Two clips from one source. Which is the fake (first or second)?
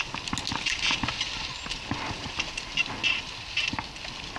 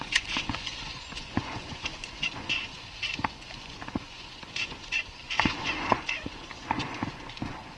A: second